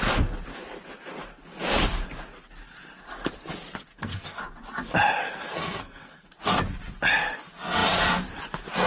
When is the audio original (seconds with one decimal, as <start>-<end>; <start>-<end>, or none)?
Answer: 0.0-3.9; 4.4-5.2; 6.3-8.9